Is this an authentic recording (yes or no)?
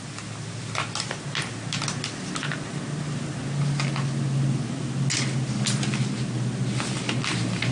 yes